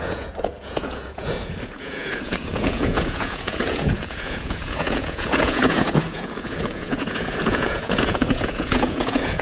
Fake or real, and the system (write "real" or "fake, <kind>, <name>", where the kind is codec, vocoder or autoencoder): fake, vocoder, Vocos